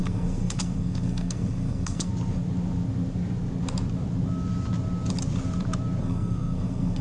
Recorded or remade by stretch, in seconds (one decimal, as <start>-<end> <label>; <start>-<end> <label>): 0.0-2.1 remade; 2.1-6.0 recorded; 6.0-7.0 remade